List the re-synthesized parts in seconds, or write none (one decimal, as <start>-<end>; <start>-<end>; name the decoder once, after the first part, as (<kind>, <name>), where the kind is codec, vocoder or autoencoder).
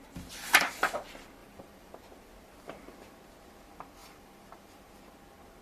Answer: 1.4-1.9 (vocoder, BigVGAN v2); 4.0-4.9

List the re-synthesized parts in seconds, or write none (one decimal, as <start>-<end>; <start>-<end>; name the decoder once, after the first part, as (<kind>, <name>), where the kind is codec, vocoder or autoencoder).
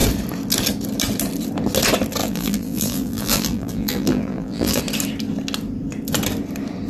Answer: 2.2-4.8 (vocoder, BigVGAN v2)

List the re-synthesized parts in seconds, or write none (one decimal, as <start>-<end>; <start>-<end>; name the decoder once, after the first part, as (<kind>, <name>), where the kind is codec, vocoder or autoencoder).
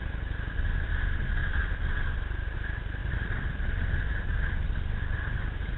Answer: 1.4-2.5 (vocoder, BigVGAN v2); 3.0-3.6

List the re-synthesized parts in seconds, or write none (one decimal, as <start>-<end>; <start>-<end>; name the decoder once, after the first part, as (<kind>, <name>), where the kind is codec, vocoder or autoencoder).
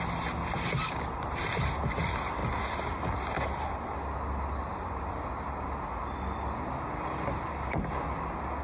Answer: 0.8-1.8 (vocoder, BigVGAN v2)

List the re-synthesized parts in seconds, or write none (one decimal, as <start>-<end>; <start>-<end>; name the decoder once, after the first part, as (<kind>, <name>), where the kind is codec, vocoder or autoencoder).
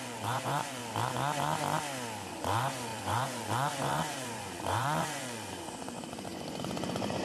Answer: 0.0-0.8 (vocoder, Vocos); 2.3-7.2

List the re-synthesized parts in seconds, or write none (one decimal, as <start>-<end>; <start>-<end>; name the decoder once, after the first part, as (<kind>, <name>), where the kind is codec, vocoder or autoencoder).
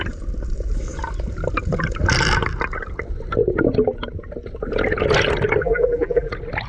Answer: 5.6-6.3 (vocoder, BigVGAN v2)